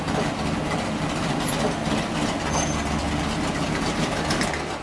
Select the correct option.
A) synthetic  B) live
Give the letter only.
B